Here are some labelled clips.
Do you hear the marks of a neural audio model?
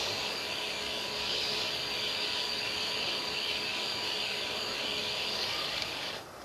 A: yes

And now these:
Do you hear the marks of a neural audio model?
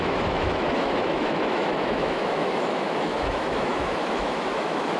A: yes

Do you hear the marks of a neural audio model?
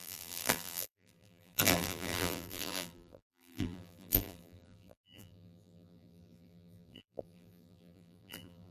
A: yes